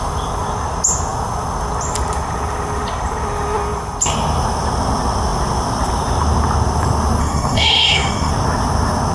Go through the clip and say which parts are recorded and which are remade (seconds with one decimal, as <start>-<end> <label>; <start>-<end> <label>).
0.0-7.2 recorded; 7.2-8.3 remade; 8.3-9.1 recorded